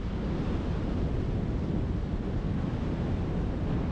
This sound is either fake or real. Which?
real